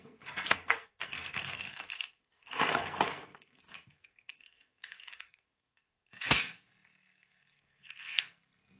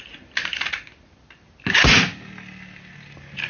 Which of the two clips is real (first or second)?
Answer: second